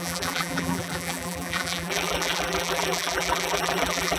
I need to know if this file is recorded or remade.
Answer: remade